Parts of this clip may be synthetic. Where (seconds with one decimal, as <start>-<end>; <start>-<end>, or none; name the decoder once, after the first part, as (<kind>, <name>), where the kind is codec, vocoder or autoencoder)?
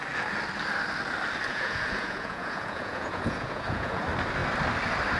1.5-4.0 (vocoder, Vocos)